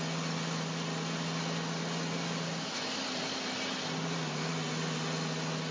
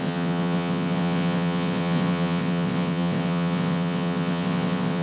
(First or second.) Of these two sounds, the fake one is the second